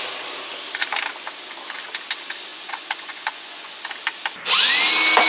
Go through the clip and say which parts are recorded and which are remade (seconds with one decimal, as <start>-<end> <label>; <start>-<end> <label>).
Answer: 0.0-2.5 recorded; 2.5-3.8 remade; 3.8-5.3 recorded